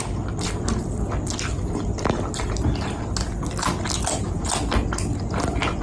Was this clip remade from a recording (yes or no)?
no